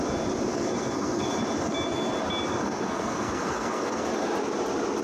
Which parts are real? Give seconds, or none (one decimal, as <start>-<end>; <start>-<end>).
0.0-0.5; 1.3-2.5; 4.1-5.0